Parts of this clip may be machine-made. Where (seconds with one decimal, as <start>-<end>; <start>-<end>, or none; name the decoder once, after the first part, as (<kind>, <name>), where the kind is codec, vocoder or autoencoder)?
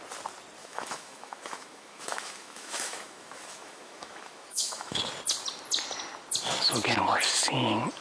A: 0.6-5.0 (autoencoder, DAC-VAE)